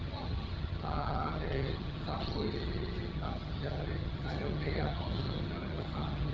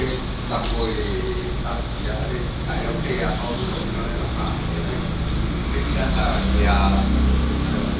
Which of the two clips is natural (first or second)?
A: second